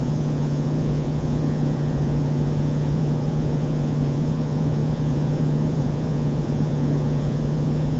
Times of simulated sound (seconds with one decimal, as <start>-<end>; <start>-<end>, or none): 0.0-8.0